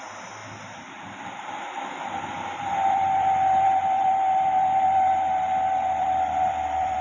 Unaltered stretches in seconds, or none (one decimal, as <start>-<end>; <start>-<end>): 0.0-2.7